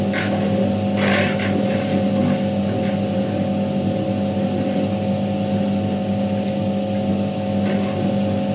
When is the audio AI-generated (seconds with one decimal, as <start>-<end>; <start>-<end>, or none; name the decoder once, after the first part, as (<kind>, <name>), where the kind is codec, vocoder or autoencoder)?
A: none